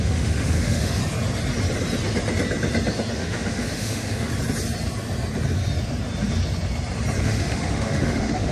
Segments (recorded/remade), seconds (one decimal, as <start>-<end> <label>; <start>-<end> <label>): 0.0-1.0 remade; 1.0-3.1 recorded; 3.1-4.3 remade; 4.3-7.2 recorded; 7.2-8.5 remade